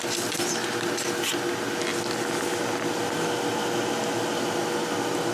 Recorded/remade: recorded